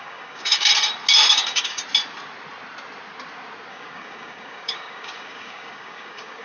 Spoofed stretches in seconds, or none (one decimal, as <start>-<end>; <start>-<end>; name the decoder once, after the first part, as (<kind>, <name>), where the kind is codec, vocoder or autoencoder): 0.0-0.7 (codec, DAC); 1.3-1.8; 3.7-6.4